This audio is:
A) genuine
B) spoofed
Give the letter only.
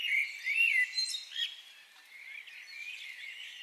A